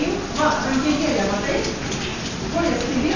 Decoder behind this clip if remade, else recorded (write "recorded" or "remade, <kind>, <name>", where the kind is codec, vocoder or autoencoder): recorded